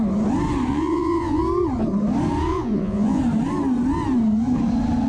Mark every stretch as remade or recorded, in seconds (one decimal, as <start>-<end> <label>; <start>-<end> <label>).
0.0-0.7 recorded; 0.7-1.4 remade; 1.4-2.5 recorded; 2.5-3.2 remade; 3.2-5.1 recorded